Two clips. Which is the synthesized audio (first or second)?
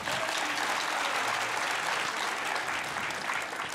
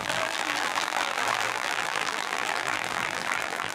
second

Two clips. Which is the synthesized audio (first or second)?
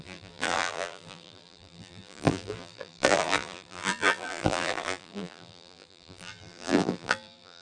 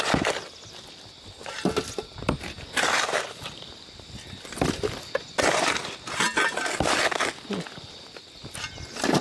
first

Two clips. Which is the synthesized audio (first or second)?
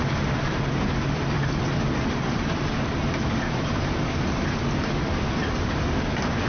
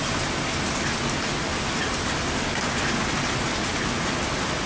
first